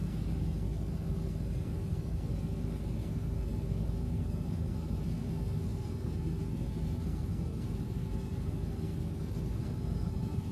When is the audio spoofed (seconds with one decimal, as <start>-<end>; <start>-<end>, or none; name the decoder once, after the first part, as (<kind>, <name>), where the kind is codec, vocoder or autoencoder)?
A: 0.0-10.5 (codec, SNAC)